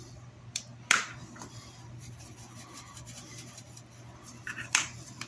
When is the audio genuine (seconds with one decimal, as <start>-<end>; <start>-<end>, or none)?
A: none